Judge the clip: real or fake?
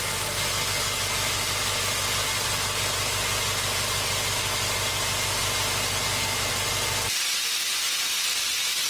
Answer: real